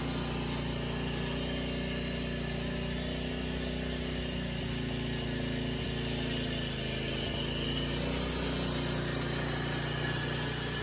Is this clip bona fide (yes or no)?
yes